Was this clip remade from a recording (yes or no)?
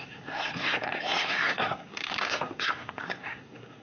yes